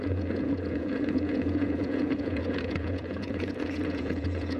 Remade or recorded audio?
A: remade